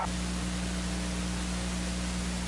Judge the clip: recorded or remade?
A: recorded